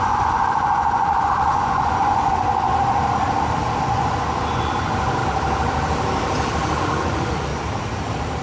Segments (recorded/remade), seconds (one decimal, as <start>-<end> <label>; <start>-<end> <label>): 0.0-2.7 remade; 2.7-3.8 recorded; 3.8-5.2 remade; 5.2-6.8 recorded; 6.8-7.5 remade; 7.5-8.4 recorded